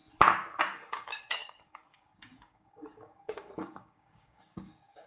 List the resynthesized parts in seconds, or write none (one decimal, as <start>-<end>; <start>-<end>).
0.6-5.1